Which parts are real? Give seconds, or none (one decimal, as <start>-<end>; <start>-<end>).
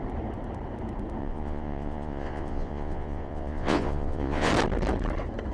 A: 0.0-1.2; 4.5-5.5